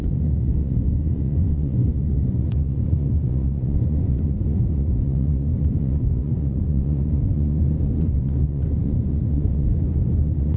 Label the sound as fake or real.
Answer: fake